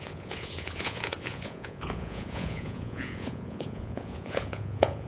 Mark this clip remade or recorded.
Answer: remade